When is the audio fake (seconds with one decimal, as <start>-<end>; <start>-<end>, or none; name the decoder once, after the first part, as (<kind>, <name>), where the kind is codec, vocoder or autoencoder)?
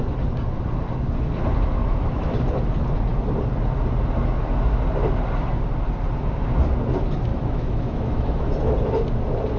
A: 1.8-2.3 (autoencoder, DAC-VAE); 7.3-8.5